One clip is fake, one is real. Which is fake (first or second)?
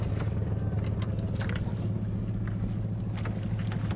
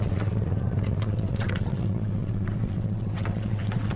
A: second